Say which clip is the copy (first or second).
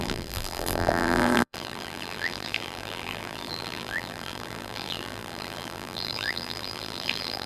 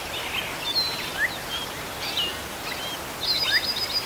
first